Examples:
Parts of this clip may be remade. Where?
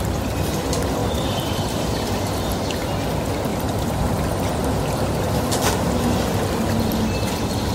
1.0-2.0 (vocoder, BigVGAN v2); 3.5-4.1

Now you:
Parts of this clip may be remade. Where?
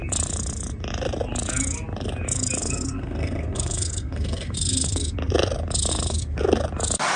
2.6-5.1 (codec, SNAC); 5.9-6.4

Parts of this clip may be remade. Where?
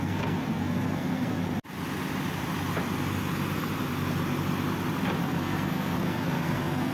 0.0-1.4 (codec, SNAC); 5.2-6.9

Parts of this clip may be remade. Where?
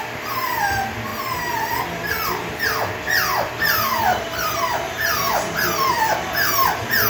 3.9-6.5 (vocoder, BigVGAN v2)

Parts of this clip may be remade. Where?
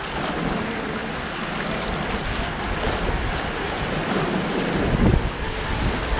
none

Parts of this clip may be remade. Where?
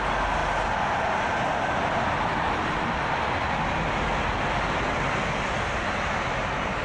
none